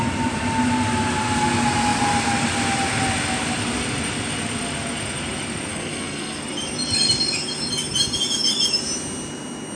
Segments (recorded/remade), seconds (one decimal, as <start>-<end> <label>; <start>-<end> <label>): 0.0-5.7 recorded; 5.7-6.4 remade; 6.4-9.8 recorded